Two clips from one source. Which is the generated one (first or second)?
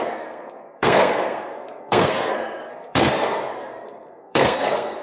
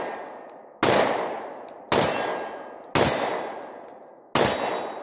first